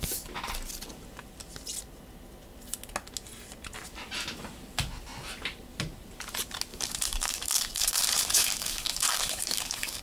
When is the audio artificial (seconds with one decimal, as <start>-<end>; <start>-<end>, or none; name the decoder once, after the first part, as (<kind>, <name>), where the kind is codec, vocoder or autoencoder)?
6.7-10.0 (codec, DAC)

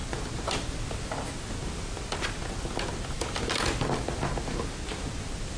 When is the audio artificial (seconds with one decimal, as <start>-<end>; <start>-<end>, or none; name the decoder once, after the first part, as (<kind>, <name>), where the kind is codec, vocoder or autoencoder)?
none

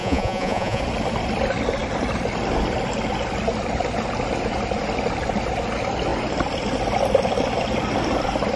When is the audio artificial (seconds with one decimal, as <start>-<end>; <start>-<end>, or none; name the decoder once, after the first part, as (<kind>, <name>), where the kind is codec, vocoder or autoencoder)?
0.0-0.8 (vocoder, Vocos)

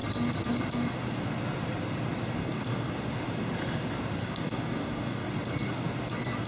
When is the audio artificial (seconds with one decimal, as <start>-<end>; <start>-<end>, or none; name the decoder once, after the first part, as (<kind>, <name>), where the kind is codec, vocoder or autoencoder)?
2.4-2.9 (codec, DAC); 4.2-5.3